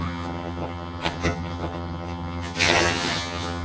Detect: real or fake fake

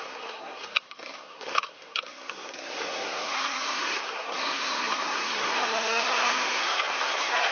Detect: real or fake fake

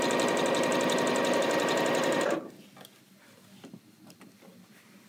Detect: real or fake real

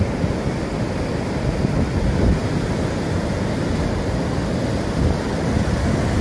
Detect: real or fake real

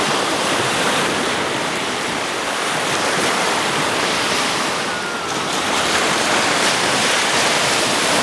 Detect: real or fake fake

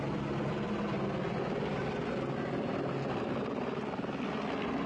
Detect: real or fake real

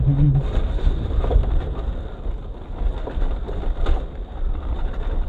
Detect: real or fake real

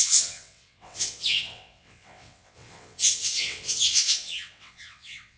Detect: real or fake fake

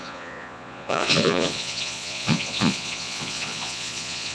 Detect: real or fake fake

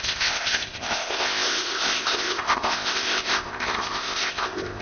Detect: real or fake fake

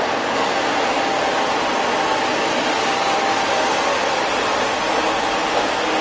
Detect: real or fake real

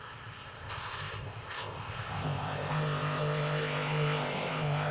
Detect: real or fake fake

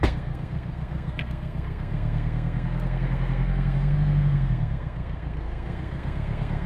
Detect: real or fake fake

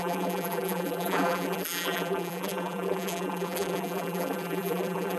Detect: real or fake fake